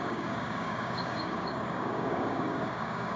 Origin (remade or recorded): remade